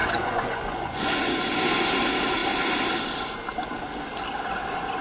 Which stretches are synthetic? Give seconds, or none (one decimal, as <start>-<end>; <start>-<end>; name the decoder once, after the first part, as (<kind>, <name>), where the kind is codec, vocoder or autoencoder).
0.0-1.2 (vocoder, Vocos)